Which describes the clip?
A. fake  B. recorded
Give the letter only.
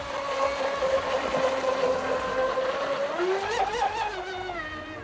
B